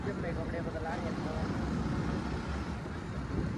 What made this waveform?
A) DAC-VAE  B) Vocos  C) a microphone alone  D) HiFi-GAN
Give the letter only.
C